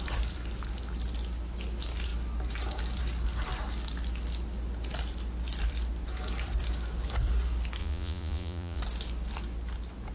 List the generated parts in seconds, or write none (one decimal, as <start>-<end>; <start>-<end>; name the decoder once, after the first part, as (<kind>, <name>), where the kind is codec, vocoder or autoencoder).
7.8-8.8 (vocoder, Vocos)

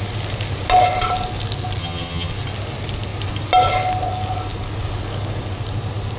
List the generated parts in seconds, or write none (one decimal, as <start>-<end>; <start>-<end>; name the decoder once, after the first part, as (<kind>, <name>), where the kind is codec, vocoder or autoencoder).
1.8-2.3 (vocoder, HiFi-GAN)

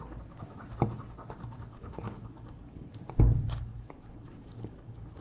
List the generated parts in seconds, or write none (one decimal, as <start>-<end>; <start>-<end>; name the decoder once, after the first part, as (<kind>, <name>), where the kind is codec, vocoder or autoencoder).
1.7-2.9 (codec, DAC); 3.7-5.2

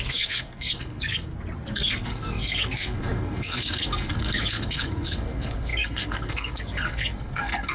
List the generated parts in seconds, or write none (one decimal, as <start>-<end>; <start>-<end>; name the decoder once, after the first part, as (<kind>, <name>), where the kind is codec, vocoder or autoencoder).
0.0-1.2 (codec, SNAC); 1.7-7.7